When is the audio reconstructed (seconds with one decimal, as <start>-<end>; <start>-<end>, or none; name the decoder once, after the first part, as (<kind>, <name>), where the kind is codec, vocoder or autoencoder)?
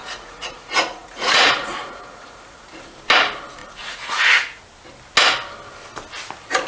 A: 0.0-2.8 (vocoder, Vocos); 3.6-4.6